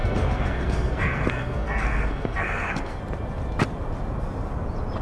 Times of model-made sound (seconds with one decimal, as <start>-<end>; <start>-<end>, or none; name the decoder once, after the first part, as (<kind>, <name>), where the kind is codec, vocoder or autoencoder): 0.0-3.0 (codec, SNAC)